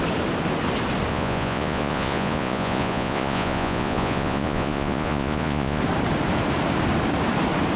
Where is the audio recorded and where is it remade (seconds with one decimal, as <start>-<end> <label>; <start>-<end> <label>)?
0.0-1.1 recorded; 1.1-5.8 remade; 5.8-7.8 recorded